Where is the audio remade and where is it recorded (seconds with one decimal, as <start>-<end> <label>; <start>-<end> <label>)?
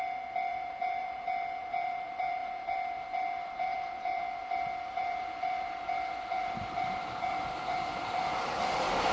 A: 0.0-9.1 remade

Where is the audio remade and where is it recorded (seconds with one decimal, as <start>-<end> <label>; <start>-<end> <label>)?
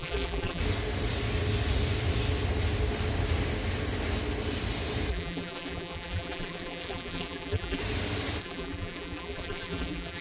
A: 0.0-0.6 remade; 0.6-5.1 recorded; 5.1-7.8 remade; 7.8-8.4 recorded; 8.4-10.2 remade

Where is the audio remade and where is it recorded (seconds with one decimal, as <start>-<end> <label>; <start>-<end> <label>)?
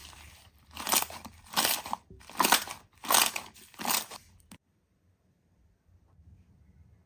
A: 0.0-0.9 remade; 0.9-7.1 recorded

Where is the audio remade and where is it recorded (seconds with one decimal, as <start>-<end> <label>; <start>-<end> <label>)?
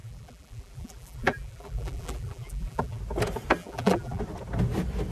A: 0.0-3.0 remade; 3.0-3.6 recorded; 3.6-4.2 remade; 4.2-5.1 recorded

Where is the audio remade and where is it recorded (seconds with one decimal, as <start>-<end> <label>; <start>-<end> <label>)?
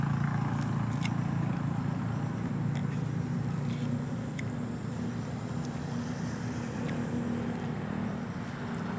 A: 0.0-9.0 recorded